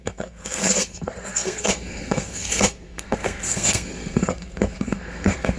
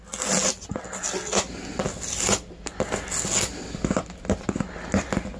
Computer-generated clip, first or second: first